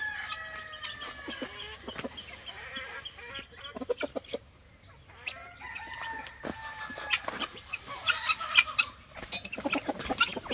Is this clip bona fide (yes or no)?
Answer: yes